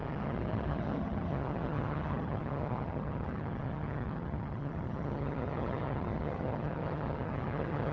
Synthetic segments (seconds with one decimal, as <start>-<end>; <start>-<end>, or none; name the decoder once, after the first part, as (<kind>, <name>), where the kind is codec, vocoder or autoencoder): 0.0-7.9 (vocoder, HiFi-GAN)